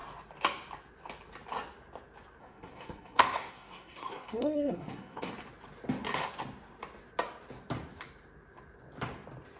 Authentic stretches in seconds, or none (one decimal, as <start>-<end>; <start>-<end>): 0.0-2.4; 5.3-9.6